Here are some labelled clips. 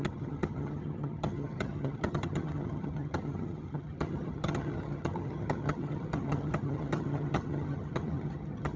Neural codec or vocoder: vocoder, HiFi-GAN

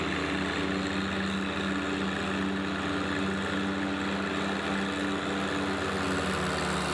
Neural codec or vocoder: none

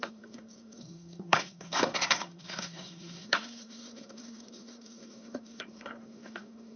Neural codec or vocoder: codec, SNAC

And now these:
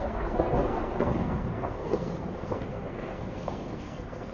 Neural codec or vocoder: codec, SNAC